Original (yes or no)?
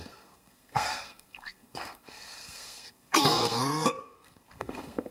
no